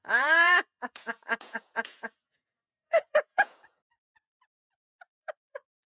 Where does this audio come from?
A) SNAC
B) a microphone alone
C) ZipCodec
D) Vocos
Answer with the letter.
D